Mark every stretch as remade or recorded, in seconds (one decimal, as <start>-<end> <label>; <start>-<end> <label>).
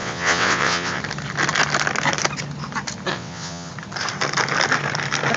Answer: 0.0-1.0 remade; 1.0-3.1 recorded; 3.1-3.7 remade; 3.7-5.4 recorded